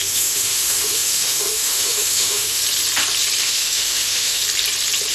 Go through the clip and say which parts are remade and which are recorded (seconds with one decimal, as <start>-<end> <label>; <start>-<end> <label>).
0.0-2.6 remade; 2.6-3.4 recorded; 3.4-4.4 remade; 4.4-5.1 recorded